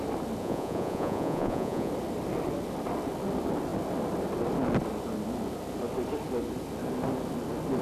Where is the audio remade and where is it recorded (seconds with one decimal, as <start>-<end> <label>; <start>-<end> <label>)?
0.0-0.4 recorded; 0.4-1.9 remade; 1.9-7.8 recorded